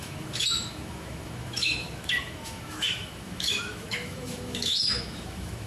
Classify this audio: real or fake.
fake